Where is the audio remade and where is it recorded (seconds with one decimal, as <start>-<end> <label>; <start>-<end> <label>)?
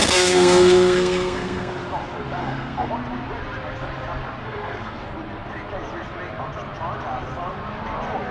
0.0-1.7 remade; 1.7-2.4 recorded; 2.4-2.9 remade; 2.9-4.4 recorded; 4.4-5.0 remade; 5.0-8.3 recorded